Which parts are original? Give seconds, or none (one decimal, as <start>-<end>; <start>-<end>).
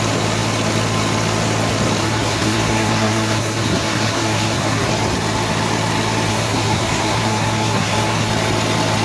0.0-2.0; 4.9-6.3; 8.3-9.0